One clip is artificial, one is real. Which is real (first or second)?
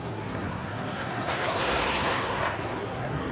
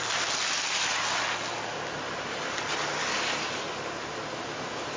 second